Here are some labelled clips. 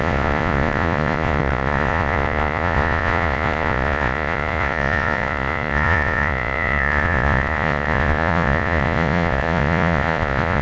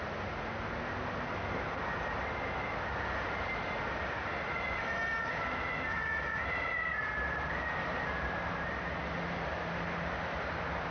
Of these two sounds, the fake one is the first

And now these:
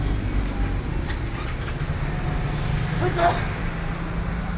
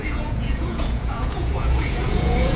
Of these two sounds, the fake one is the second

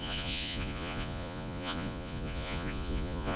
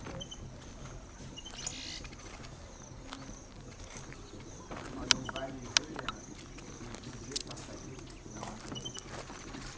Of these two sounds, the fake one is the first